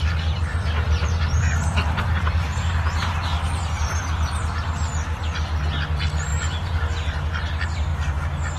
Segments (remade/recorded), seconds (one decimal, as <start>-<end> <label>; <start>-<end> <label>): 0.0-0.4 recorded; 0.4-4.0 remade; 4.0-6.3 recorded; 6.3-6.9 remade; 6.9-8.6 recorded